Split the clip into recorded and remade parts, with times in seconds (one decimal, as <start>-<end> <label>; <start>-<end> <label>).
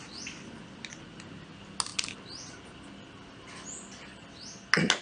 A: 0.0-5.0 recorded